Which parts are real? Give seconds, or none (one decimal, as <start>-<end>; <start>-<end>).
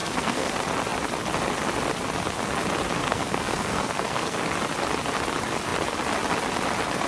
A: 0.5-3.0; 4.4-7.1